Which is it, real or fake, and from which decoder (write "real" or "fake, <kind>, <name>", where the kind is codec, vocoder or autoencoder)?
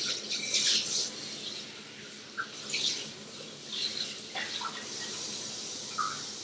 real